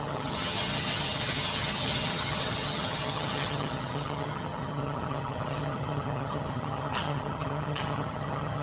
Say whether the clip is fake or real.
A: fake